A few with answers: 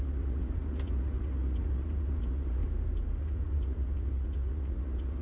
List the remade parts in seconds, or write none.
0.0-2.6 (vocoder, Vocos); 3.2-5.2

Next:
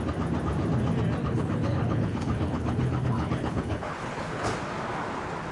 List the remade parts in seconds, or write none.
1.2-4.5 (codec, HILCodec)

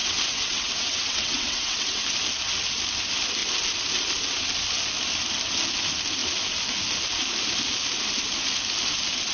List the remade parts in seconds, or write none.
0.0-2.0 (vocoder, WaveNeXt)

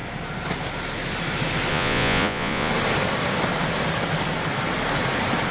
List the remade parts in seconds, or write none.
1.7-2.7 (vocoder, Vocos)

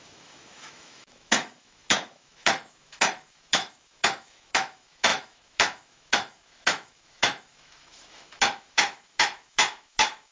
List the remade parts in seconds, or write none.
0.0-10.3 (autoencoder, DAC-VAE)